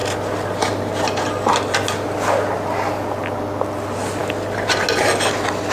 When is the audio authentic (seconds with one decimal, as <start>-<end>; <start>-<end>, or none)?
0.0-5.7

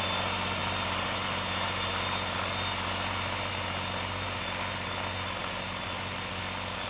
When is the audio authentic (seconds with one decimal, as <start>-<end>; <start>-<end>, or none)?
0.0-6.9

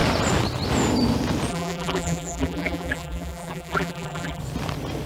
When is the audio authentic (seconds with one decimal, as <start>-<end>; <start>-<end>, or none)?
0.0-1.5; 4.4-5.1

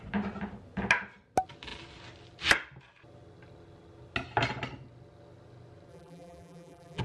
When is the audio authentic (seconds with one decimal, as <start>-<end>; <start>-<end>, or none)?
0.0-5.9

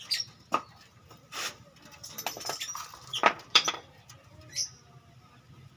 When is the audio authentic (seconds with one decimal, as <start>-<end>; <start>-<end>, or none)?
0.0-3.1; 3.6-5.8

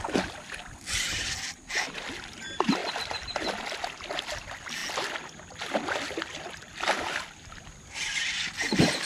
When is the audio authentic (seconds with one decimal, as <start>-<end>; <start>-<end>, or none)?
0.0-9.1